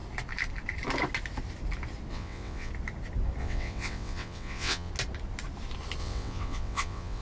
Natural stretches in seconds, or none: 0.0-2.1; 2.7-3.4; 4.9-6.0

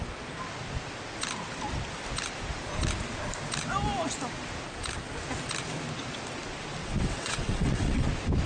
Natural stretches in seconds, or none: 0.0-6.8; 8.1-8.5